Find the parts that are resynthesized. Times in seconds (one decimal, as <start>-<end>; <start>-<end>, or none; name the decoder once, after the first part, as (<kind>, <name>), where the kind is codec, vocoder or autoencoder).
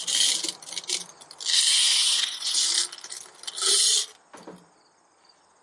1.7-2.7 (vocoder, Vocos)